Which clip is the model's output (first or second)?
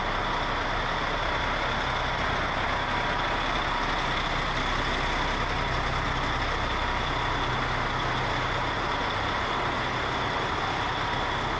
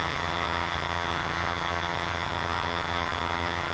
second